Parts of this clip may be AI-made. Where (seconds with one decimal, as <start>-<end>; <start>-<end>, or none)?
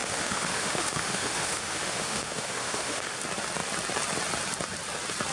0.0-3.2